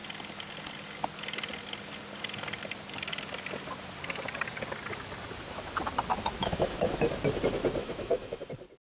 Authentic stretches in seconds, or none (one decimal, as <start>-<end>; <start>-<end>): 0.0-6.4; 6.9-7.8; 8.5-8.9